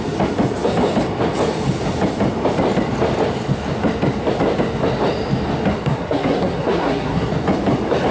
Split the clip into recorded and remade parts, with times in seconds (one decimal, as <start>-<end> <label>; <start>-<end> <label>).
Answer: 0.0-5.7 recorded; 5.7-7.3 remade; 7.3-8.1 recorded